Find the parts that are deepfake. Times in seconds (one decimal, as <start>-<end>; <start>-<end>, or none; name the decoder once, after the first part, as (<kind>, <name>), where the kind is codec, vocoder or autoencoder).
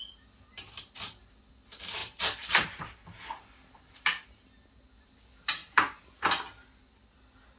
none